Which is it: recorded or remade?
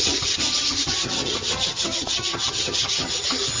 remade